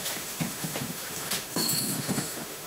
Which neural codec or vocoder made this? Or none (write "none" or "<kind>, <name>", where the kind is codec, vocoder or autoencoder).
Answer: autoencoder, DAC-VAE